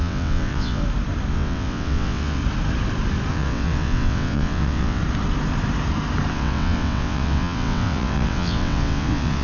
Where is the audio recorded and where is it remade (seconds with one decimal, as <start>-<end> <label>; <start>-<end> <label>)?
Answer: 0.0-0.8 remade; 0.8-1.3 recorded; 1.3-2.4 remade; 2.4-3.3 recorded; 3.3-5.0 remade; 5.0-6.3 recorded; 6.3-9.4 remade